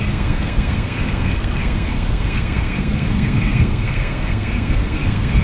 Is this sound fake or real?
fake